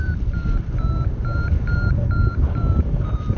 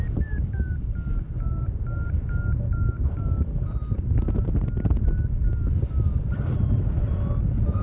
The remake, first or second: first